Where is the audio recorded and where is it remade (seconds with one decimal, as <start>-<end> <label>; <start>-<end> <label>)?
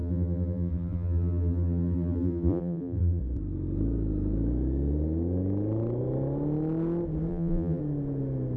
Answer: 0.0-3.2 remade; 3.2-7.3 recorded; 7.3-7.8 remade; 7.8-8.6 recorded